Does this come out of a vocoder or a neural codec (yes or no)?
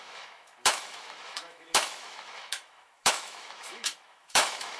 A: yes